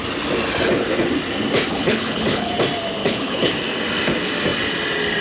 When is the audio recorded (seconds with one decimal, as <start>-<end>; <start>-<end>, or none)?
0.0-1.7; 2.5-3.0; 3.5-5.2